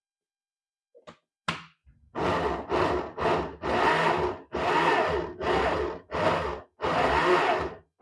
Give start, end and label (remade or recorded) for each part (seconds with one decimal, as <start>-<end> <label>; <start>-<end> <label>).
0.0-8.0 recorded